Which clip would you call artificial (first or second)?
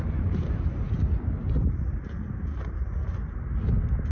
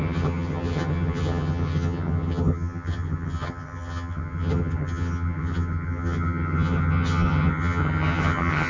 second